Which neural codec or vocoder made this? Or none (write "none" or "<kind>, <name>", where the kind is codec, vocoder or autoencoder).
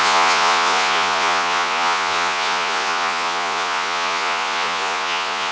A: vocoder, Vocos